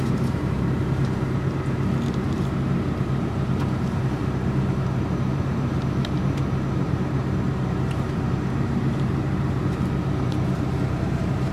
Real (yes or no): no